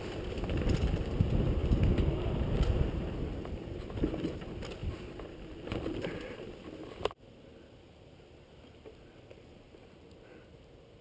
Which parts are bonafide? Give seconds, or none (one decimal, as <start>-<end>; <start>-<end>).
0.0-11.0